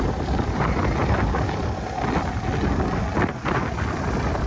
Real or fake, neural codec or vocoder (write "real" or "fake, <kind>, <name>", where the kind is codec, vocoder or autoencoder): real